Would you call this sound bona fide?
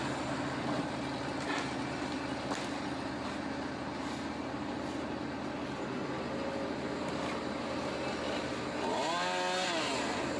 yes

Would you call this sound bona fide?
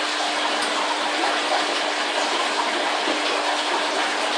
yes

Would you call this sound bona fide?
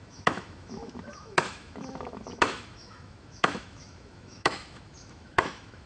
no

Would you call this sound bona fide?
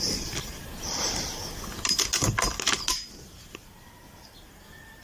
yes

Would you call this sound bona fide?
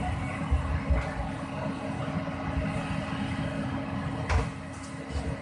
yes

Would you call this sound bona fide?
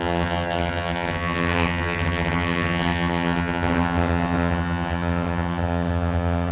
no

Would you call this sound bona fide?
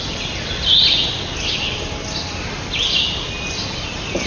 yes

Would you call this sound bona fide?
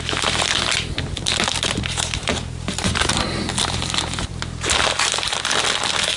yes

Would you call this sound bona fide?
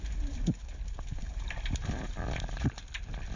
yes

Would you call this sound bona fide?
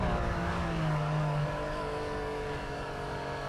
no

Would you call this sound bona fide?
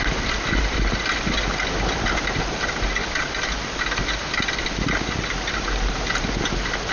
yes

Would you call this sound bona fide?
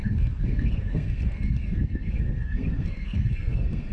no